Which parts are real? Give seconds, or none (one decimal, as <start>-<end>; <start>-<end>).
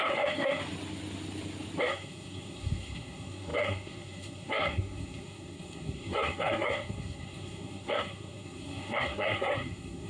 0.6-1.8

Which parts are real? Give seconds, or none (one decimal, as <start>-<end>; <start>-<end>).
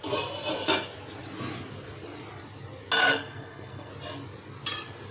0.0-3.1; 3.9-5.1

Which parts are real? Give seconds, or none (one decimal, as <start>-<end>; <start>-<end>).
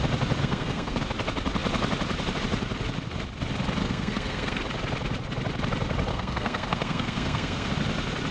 0.0-0.4; 1.0-3.8; 4.6-6.1; 7.7-8.3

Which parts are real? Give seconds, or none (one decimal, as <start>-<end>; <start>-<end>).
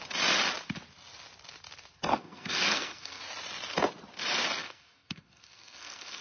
0.0-2.1; 3.2-4.6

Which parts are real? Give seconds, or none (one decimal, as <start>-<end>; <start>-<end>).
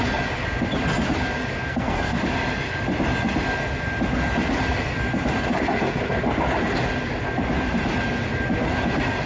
0.0-1.6; 2.2-9.3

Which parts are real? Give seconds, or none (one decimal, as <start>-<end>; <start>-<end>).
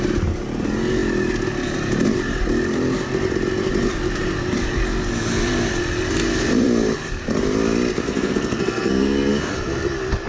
0.0-7.9; 9.3-10.3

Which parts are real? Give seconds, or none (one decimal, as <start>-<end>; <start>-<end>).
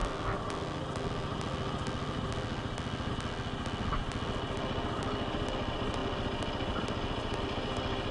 0.0-8.1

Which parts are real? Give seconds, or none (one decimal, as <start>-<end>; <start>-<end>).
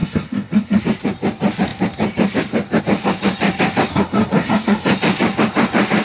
0.8-3.9; 4.9-6.0